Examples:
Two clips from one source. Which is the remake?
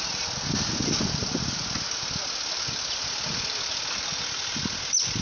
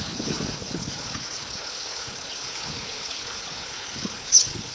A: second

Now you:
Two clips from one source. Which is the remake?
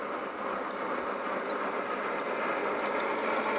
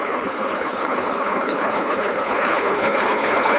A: second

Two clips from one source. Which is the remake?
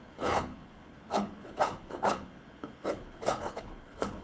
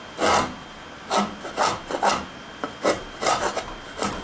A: first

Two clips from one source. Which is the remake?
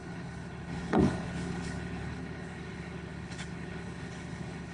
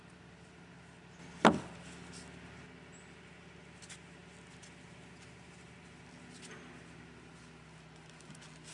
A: first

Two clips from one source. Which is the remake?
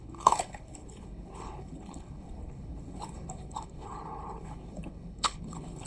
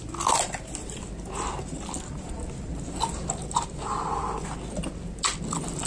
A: first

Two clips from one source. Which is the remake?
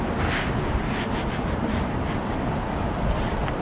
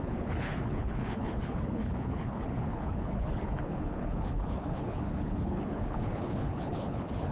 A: second